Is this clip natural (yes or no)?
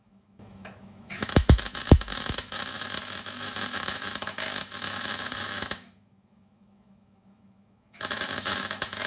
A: no